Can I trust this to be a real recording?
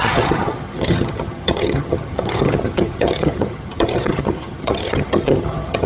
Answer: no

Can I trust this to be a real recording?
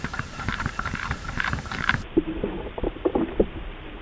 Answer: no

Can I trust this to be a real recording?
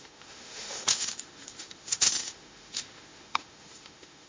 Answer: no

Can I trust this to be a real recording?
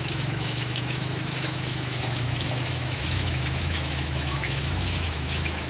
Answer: no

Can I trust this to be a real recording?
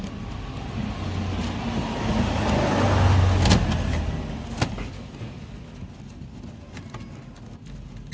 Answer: yes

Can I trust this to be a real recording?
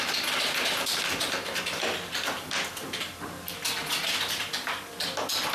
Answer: yes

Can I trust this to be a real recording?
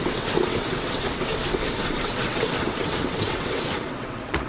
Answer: no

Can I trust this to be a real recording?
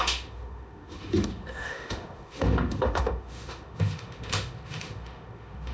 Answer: no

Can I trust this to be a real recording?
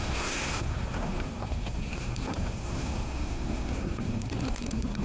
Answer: no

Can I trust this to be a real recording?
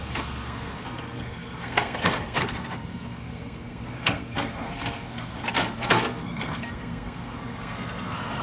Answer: no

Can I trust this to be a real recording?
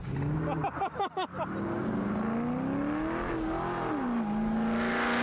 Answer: yes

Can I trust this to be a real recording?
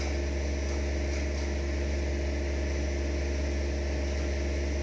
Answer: yes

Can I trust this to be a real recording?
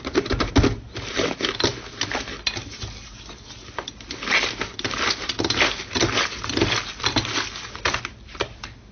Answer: yes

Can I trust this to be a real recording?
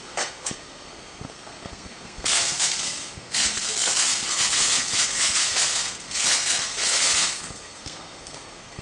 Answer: no